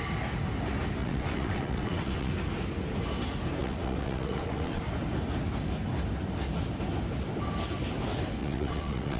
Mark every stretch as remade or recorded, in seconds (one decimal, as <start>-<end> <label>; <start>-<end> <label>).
0.0-1.0 recorded; 1.0-2.3 remade; 2.3-3.6 recorded; 3.6-4.8 remade; 4.8-8.4 recorded; 8.4-9.2 remade